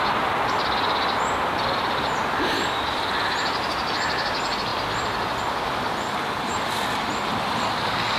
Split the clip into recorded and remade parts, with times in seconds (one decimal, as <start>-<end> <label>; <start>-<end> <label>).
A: 0.0-8.2 recorded